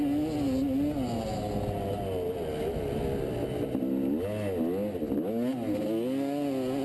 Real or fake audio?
real